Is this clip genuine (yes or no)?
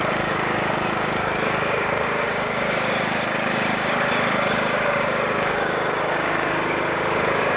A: no